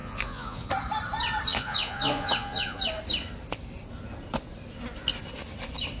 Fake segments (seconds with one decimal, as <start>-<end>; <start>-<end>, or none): 0.0-0.7; 1.5-2.8